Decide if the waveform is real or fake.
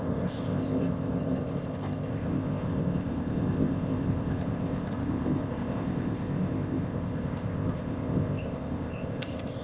fake